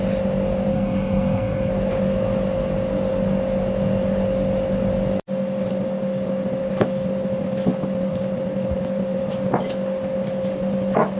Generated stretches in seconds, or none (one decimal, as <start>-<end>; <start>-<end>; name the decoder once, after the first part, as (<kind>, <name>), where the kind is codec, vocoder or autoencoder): 0.7-1.7 (codec, SNAC)